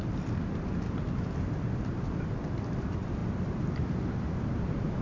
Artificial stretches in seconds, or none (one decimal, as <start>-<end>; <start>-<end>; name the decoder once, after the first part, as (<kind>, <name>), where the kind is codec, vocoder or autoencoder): none

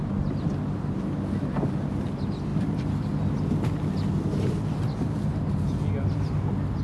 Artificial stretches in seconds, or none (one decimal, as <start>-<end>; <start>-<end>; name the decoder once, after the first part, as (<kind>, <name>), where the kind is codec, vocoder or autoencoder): none

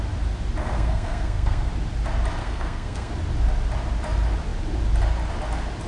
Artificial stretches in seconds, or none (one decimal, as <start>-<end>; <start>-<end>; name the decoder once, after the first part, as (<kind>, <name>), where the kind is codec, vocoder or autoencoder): 0.6-1.7 (codec, SNAC); 2.4-3.1

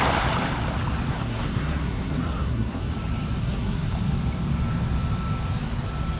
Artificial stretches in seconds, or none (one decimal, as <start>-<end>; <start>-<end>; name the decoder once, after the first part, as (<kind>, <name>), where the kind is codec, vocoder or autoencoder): 1.1-2.9 (codec, SNAC); 3.4-3.9

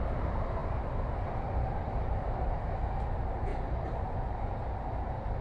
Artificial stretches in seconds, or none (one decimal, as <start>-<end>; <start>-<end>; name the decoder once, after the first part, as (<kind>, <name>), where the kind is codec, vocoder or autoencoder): none

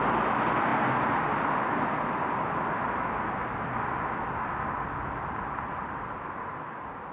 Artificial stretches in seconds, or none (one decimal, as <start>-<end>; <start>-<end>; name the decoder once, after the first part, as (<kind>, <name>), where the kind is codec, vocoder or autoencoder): none